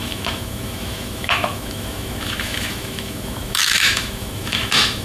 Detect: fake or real fake